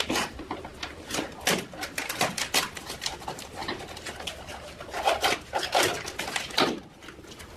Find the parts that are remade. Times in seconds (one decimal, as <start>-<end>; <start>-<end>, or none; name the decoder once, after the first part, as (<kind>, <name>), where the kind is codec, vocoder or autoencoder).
none